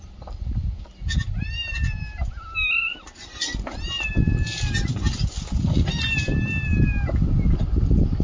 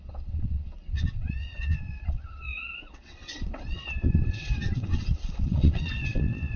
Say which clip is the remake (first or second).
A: second